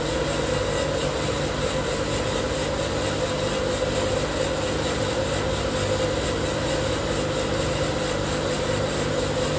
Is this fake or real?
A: real